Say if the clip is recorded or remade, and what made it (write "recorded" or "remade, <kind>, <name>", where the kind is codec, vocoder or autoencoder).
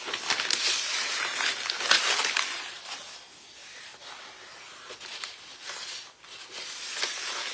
recorded